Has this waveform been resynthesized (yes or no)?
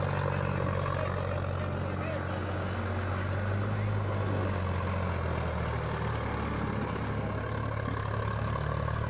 no